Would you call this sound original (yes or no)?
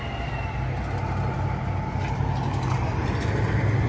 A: yes